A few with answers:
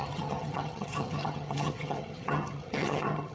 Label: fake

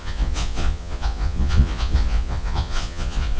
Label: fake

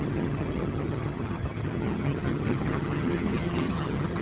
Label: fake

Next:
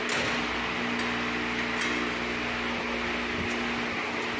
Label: real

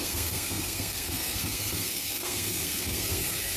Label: fake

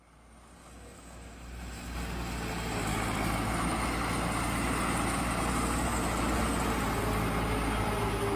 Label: real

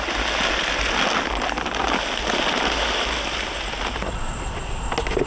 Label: real